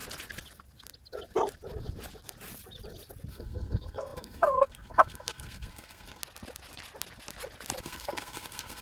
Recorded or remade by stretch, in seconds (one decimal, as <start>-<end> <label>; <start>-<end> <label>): 0.0-3.3 recorded; 3.3-6.2 remade; 6.2-7.8 recorded; 7.8-8.8 remade